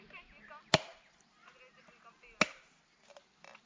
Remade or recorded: recorded